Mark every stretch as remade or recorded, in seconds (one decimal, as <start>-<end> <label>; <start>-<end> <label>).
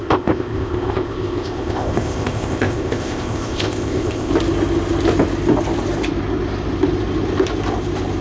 0.0-4.3 remade; 4.3-8.2 recorded